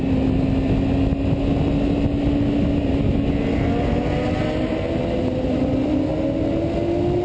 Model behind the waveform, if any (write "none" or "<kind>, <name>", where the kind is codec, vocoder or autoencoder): none